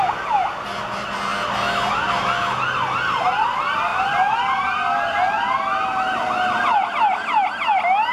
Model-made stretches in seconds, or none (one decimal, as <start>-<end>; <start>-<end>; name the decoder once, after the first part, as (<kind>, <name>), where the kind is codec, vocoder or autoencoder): none